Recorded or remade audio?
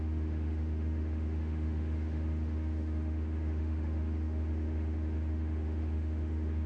remade